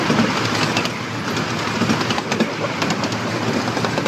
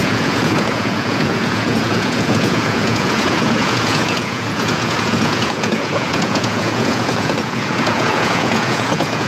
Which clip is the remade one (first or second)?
second